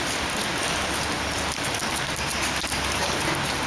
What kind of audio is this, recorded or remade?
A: recorded